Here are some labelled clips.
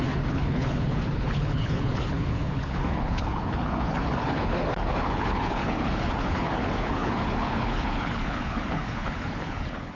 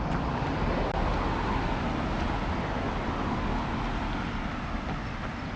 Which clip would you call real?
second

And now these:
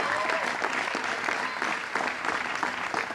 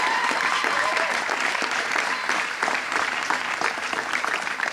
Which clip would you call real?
first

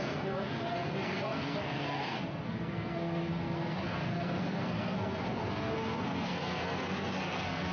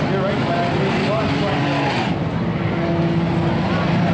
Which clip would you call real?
second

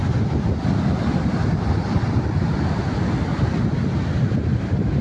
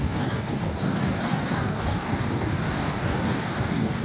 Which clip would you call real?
first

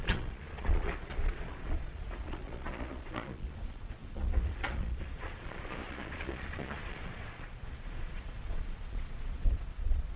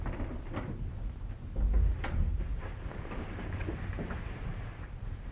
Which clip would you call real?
second